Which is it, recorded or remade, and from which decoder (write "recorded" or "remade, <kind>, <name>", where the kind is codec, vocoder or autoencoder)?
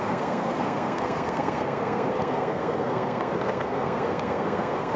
remade, codec, SNAC